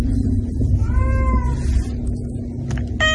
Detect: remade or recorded recorded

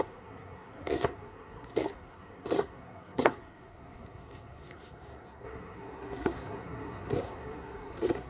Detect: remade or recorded remade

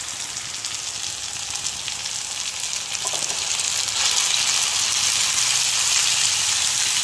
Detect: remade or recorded recorded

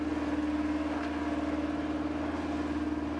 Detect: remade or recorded recorded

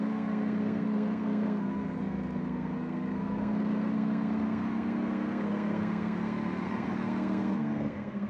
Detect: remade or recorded remade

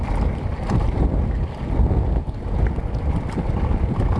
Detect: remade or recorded recorded